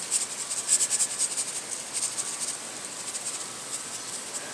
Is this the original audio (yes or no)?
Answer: yes